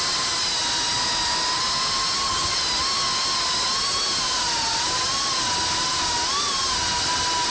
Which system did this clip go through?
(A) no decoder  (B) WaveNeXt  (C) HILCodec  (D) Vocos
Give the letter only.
A